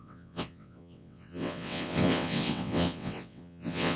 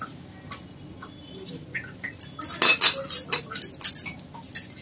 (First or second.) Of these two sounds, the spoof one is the first